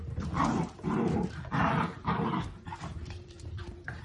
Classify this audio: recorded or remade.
remade